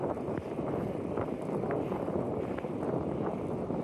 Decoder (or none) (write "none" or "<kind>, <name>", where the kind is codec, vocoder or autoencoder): none